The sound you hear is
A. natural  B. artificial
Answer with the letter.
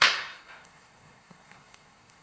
B